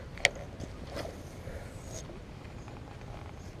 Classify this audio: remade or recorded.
recorded